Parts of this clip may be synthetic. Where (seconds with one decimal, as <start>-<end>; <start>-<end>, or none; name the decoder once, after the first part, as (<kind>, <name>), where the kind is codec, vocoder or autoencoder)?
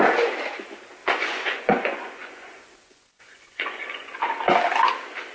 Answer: 1.0-4.2 (vocoder, Vocos)